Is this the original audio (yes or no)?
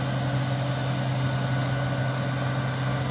yes